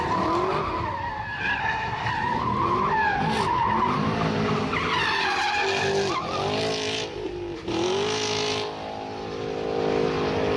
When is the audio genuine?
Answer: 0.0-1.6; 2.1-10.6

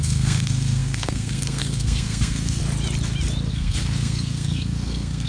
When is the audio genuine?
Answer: 2.6-3.5

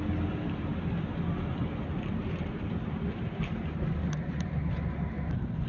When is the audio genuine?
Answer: 0.0-5.7

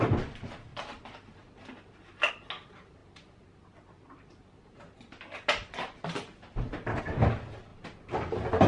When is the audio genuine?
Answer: 0.0-8.7

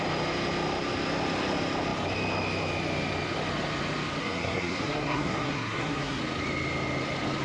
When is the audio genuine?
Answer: 0.0-4.2; 6.2-7.4

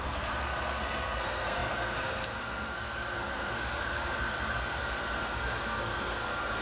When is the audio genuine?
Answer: none

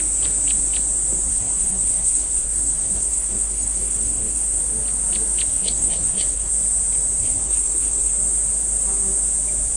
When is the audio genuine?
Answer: 0.0-1.3; 4.6-5.5; 6.5-7.2; 8.1-9.8

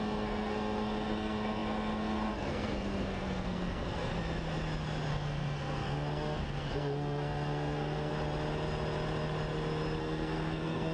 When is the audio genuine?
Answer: 4.1-5.1; 8.1-10.0